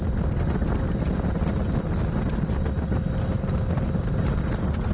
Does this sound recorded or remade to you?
recorded